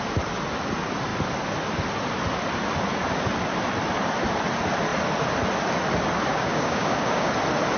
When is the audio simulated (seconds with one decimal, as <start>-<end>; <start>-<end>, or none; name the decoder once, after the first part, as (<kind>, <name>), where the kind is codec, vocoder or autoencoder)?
6.3-7.3 (codec, DAC)